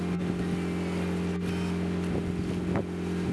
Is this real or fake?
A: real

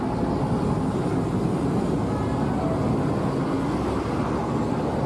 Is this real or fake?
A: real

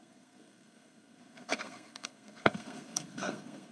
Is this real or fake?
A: fake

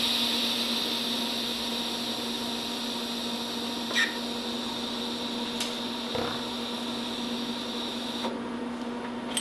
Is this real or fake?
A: real